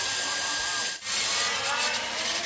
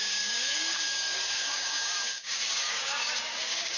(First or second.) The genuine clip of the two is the first